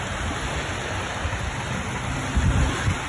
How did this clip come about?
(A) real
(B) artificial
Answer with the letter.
A